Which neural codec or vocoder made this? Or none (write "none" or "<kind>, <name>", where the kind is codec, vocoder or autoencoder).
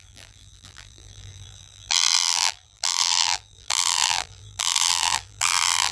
vocoder, BigVGAN v2